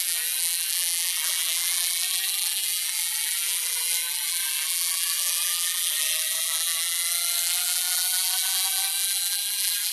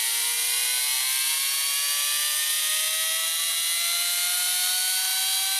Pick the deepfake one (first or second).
first